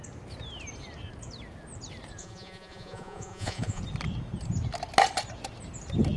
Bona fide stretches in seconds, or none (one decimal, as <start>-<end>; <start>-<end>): 0.0-2.2; 3.8-6.2